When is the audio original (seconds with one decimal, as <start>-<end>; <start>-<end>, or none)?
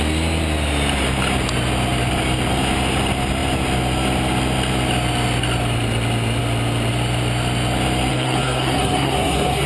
0.0-8.1